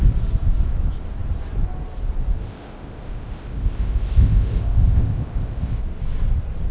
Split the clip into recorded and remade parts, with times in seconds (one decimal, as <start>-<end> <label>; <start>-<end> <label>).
0.0-2.4 recorded; 2.4-5.8 remade; 5.8-6.7 recorded